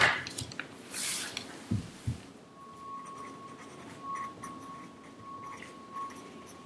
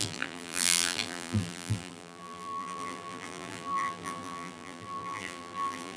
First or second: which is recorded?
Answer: first